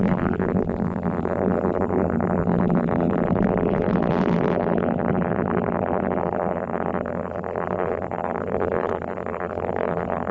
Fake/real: fake